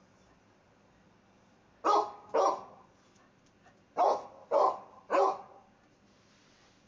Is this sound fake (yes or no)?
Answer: no